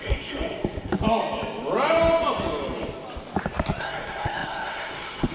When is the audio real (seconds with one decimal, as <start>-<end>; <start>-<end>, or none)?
0.9-3.8